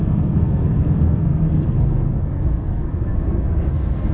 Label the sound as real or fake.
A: fake